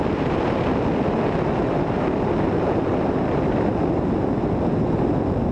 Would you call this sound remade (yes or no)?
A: no